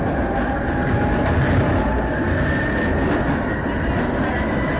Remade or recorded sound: recorded